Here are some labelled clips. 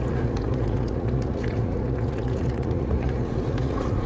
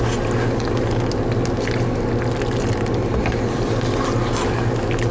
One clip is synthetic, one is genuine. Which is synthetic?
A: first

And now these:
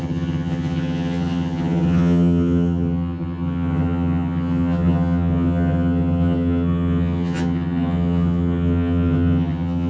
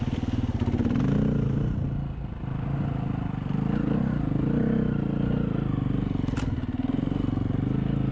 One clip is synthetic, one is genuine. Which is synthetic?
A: first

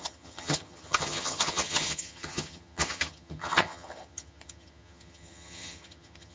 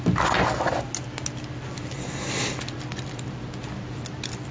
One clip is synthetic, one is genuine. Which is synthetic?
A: first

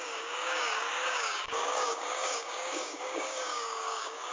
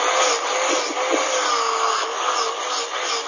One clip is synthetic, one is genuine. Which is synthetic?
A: first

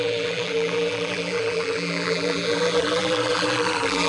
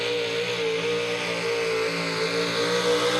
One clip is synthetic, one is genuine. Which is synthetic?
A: first